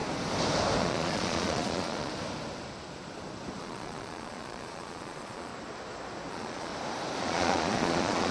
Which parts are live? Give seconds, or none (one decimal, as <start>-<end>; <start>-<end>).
0.0-0.8; 2.1-3.6; 5.5-6.3; 6.7-7.2